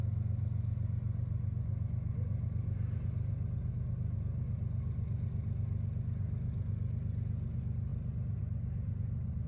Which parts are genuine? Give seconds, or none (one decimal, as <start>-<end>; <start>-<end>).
0.0-9.5